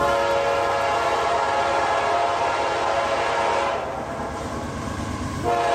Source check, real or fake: real